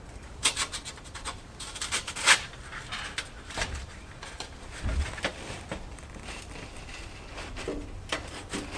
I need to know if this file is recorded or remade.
remade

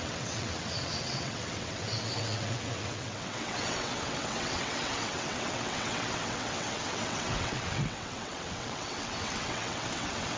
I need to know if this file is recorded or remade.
remade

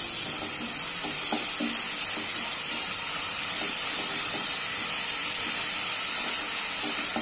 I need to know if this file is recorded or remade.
recorded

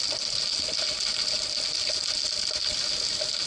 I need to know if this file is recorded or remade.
recorded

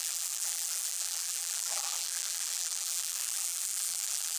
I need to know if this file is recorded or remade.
remade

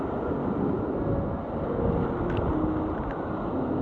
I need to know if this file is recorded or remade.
recorded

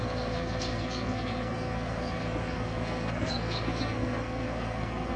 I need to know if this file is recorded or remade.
remade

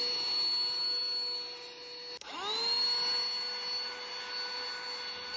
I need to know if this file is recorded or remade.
recorded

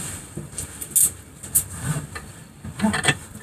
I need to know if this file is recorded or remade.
recorded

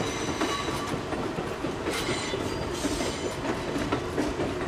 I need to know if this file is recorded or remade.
recorded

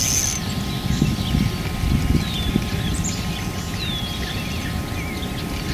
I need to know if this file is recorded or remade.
recorded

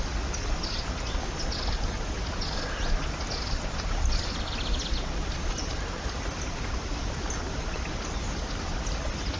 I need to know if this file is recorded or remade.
recorded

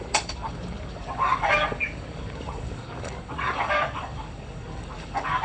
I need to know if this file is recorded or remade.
remade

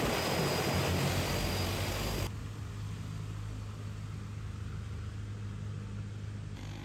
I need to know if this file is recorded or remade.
recorded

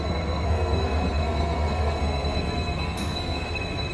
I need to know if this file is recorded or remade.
remade